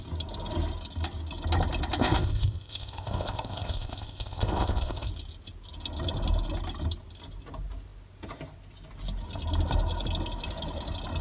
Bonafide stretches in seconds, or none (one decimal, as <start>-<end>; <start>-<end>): 0.0-2.0; 5.1-11.2